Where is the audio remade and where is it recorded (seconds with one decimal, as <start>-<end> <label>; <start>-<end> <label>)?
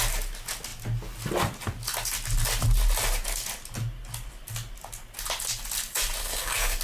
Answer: 0.0-6.2 recorded; 6.2-6.8 remade